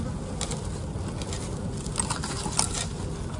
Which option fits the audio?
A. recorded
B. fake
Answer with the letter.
A